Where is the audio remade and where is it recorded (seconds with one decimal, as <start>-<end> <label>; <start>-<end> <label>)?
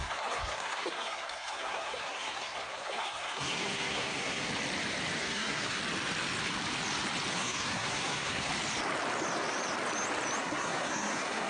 0.0-4.5 remade; 4.5-5.2 recorded; 5.2-5.8 remade; 5.8-7.3 recorded; 7.3-8.5 remade; 8.5-10.4 recorded; 10.4-11.5 remade